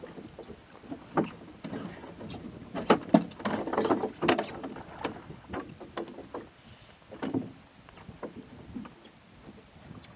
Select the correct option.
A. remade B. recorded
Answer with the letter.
B